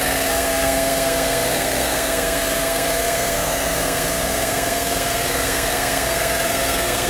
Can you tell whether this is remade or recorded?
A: remade